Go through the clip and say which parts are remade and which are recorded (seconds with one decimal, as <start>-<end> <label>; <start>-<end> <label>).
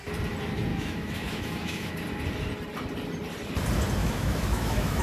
0.0-0.7 recorded; 0.7-1.9 remade; 1.9-4.0 recorded; 4.0-5.0 remade